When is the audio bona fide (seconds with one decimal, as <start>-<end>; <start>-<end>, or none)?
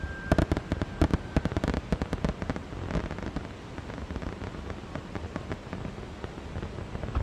0.0-7.2